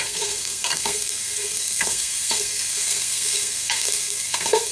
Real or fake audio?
fake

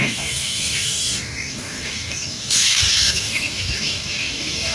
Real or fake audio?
fake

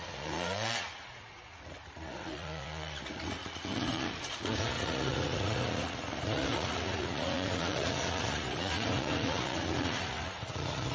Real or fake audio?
fake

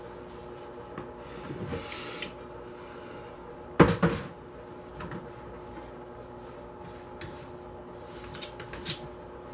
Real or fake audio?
real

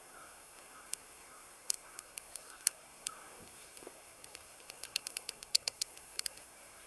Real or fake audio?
fake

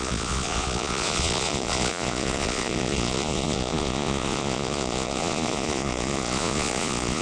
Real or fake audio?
fake